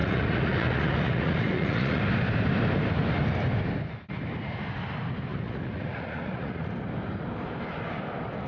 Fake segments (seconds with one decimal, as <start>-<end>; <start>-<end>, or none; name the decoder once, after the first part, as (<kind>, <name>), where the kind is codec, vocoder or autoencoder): 0.0-2.0 (vocoder, Vocos); 5.3-6.7